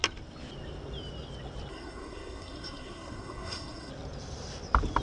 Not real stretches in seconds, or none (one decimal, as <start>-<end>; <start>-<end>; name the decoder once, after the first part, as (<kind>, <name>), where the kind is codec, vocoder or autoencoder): 1.7-3.9 (codec, SNAC)